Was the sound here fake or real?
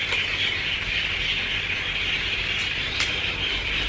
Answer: real